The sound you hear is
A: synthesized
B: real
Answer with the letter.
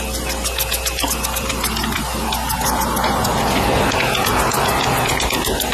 B